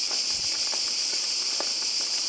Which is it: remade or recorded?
remade